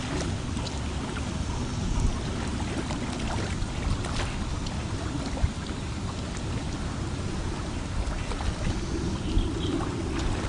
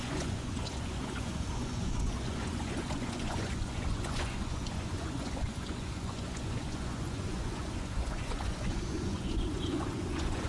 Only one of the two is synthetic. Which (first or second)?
second